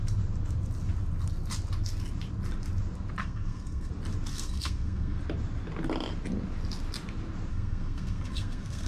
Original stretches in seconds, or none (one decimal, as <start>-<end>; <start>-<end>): 0.0-3.2; 3.9-4.3; 5.2-7.5